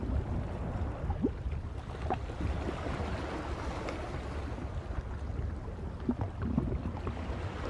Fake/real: real